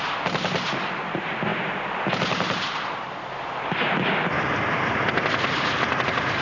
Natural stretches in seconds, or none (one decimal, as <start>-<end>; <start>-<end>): 0.0-1.5; 2.1-6.4